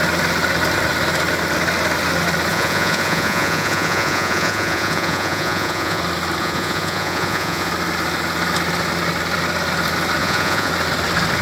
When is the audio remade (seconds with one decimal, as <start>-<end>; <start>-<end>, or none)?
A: 2.5-6.0; 6.4-7.7; 10.2-10.7